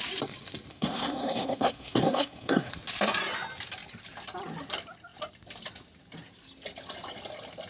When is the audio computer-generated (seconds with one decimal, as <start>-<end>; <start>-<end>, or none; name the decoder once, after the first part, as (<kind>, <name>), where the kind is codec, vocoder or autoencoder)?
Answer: 0.7-2.7 (codec, SNAC)